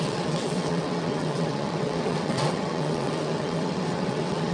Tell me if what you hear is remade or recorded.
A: remade